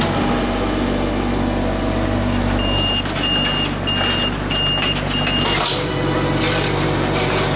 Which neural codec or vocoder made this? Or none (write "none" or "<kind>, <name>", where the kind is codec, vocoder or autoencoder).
none